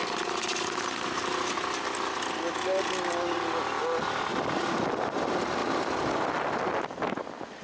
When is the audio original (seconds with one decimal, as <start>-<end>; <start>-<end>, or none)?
0.0-7.6